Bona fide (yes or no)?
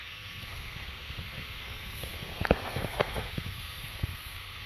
no